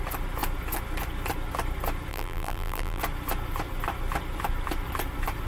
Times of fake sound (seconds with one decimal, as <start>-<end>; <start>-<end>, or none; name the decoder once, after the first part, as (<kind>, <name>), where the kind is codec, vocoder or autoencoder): 2.1-3.0 (vocoder, BigVGAN v2)